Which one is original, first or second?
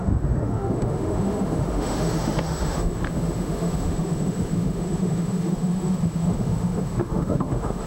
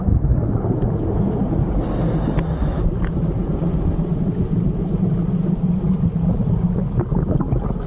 second